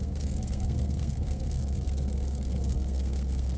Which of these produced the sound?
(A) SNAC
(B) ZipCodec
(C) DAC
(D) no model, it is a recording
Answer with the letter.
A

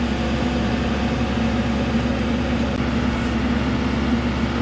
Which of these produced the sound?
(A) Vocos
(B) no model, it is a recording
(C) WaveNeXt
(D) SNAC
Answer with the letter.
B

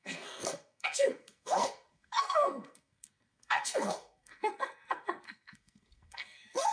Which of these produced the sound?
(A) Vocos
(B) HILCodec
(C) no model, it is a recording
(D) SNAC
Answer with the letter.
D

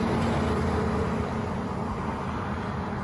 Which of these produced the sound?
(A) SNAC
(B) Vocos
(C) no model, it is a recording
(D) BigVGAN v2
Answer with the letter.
C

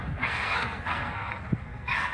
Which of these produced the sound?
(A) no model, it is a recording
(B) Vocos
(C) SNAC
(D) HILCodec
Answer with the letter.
C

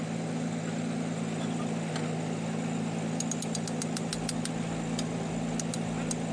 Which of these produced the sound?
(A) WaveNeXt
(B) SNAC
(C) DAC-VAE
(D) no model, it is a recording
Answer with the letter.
D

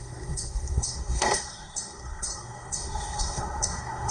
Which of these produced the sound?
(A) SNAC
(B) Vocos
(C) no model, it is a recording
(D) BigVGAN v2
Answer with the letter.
A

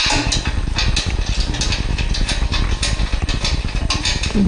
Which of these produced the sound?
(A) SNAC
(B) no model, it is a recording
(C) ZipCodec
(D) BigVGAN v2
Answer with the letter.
B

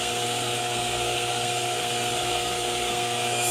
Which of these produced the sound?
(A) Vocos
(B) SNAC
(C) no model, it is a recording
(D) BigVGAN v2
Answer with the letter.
B